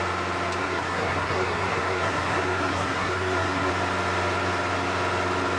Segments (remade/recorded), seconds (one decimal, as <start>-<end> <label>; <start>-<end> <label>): 0.0-0.6 recorded; 0.6-3.7 remade; 3.7-5.6 recorded